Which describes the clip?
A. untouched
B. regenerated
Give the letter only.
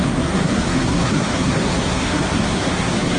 B